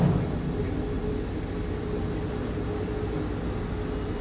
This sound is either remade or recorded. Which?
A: recorded